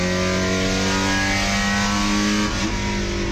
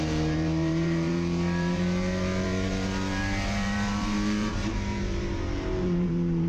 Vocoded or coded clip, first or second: second